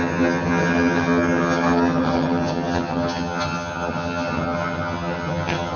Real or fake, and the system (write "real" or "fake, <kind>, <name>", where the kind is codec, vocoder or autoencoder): fake, vocoder, HiFi-GAN